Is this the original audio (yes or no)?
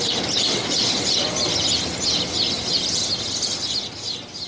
yes